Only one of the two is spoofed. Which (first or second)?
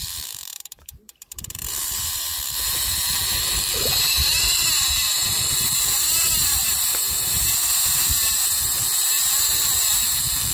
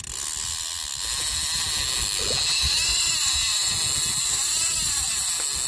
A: first